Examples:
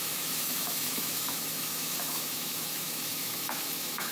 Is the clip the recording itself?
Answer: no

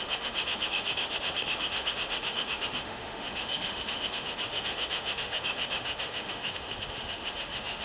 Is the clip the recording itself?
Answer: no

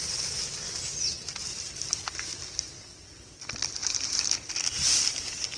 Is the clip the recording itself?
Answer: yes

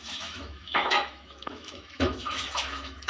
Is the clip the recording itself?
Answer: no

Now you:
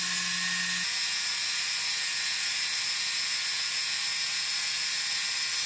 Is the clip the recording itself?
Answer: yes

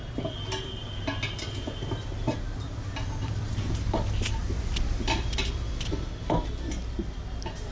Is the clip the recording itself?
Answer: yes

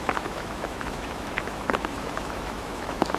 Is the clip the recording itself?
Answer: no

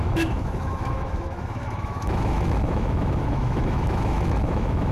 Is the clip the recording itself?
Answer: no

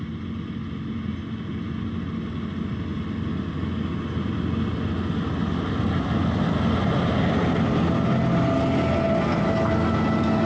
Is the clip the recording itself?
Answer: yes